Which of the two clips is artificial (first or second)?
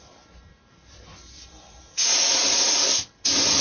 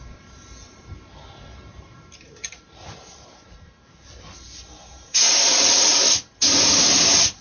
second